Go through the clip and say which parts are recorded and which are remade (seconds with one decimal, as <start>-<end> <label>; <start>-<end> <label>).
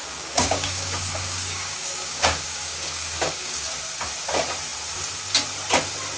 0.0-3.7 remade; 3.7-6.2 recorded